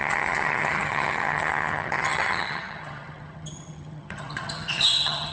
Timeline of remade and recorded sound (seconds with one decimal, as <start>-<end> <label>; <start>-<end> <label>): 0.0-5.3 remade